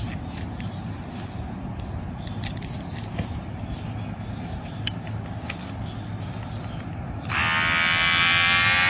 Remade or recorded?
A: recorded